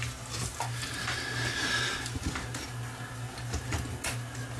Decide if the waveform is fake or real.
real